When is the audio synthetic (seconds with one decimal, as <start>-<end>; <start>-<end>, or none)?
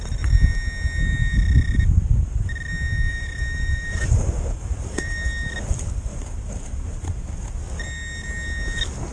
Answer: 3.1-5.1; 6.1-7.3